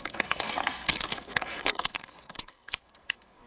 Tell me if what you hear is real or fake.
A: fake